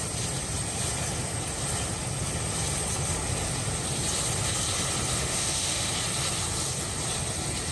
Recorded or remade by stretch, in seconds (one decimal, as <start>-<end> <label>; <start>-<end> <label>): 0.0-5.1 recorded; 5.1-5.9 remade; 5.9-7.7 recorded